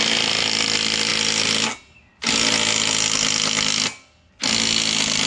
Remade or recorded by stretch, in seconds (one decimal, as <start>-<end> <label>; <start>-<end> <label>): 0.0-5.3 recorded